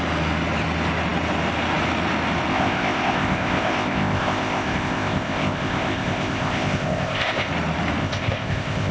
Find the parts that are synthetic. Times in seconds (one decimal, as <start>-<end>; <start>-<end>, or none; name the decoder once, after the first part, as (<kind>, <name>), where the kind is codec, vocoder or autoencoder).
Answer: 2.5-7.5 (codec, ZipCodec); 8.0-8.9